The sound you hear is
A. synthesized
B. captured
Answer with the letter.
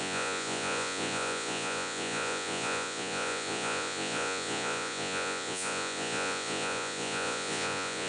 A